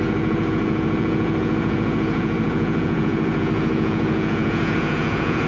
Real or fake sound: fake